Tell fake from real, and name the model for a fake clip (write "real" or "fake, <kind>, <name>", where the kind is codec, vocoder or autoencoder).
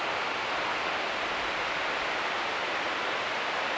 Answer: real